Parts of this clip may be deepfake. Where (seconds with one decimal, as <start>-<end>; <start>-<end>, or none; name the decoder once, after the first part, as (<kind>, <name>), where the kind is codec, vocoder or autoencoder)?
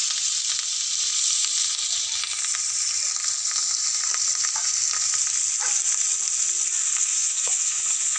7.1-8.2 (vocoder, WaveNeXt)